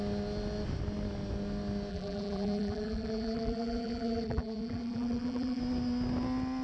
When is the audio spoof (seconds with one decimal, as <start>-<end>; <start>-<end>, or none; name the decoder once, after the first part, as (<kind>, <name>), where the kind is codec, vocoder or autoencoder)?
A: 1.9-5.6 (vocoder, BigVGAN v2)